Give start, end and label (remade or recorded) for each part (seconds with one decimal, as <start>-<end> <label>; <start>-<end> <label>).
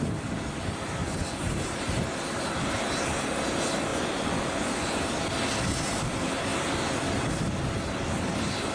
0.0-1.0 recorded; 1.0-1.5 remade; 1.5-3.9 recorded; 3.9-5.0 remade; 5.0-8.7 recorded